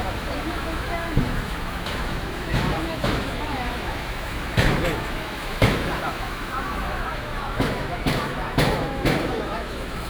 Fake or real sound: fake